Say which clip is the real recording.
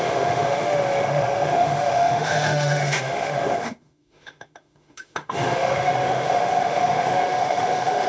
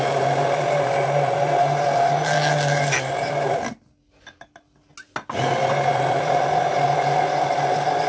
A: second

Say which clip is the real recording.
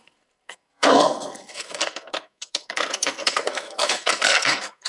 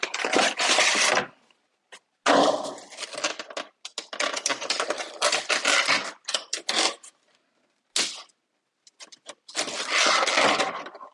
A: second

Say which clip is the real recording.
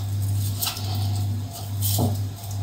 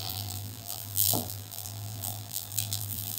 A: first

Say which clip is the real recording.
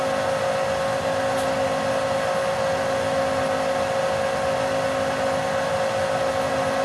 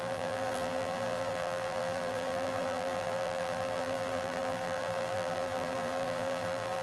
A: first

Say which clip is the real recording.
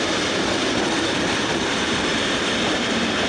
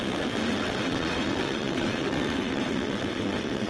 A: first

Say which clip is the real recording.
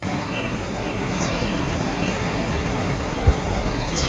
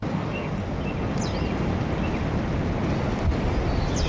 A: second